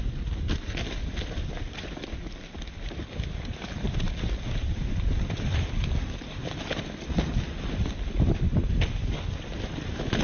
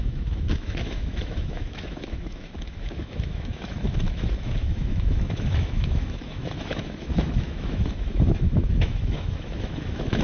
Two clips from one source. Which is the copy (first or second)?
second